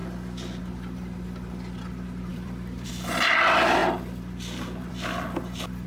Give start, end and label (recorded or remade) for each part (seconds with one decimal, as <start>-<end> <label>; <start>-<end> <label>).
0.0-2.3 recorded; 2.3-2.9 remade; 2.9-5.9 recorded